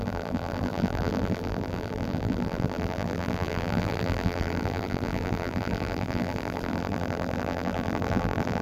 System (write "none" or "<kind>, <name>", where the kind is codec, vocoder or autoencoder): vocoder, BigVGAN v2